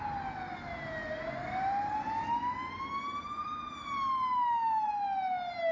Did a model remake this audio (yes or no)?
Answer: no